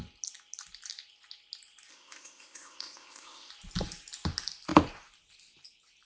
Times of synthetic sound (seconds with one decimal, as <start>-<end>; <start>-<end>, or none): 1.9-3.5

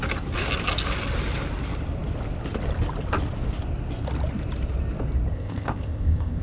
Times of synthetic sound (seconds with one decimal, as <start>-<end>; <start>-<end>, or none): 5.3-6.4

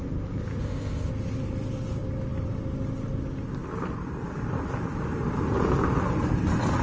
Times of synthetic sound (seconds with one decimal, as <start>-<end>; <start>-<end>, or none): 0.6-1.1

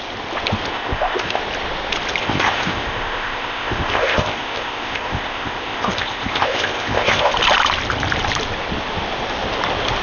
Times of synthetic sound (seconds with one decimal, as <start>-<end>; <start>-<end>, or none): 0.7-1.4; 2.2-7.3